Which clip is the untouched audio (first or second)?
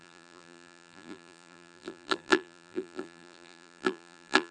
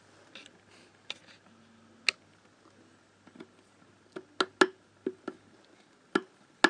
second